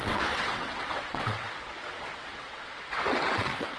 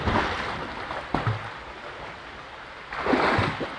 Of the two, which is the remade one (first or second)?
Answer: first